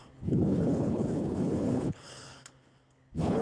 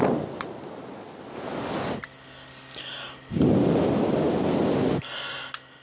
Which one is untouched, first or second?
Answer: second